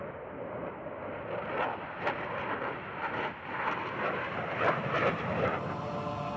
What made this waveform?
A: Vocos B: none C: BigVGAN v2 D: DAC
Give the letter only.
B